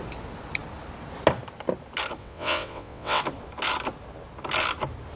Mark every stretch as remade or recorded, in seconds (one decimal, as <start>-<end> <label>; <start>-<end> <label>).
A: 0.0-2.2 recorded; 2.2-3.2 remade; 3.2-5.2 recorded